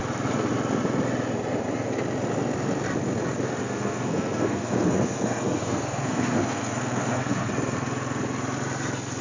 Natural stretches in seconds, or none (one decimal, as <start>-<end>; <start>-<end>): 0.0-3.6; 7.5-9.2